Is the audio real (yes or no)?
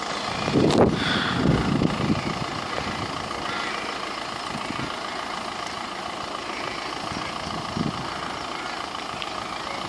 yes